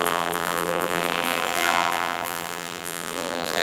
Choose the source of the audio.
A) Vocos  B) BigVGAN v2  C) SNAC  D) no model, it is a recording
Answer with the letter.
B